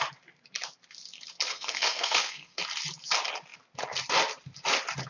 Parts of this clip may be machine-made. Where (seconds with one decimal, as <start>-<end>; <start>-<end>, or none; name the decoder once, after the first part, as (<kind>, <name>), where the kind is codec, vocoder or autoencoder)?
1.5-2.6 (codec, SNAC)

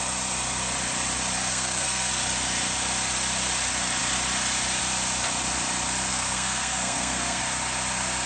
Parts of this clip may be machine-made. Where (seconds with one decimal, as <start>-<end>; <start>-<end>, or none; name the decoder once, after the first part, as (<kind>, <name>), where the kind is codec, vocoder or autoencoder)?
1.5-2.1 (codec, SNAC); 6.1-7.4

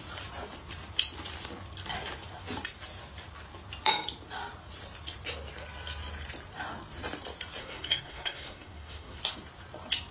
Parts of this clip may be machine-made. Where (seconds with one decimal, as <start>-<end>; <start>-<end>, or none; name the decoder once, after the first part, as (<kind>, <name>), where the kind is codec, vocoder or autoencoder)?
7.6-9.2 (codec, SNAC)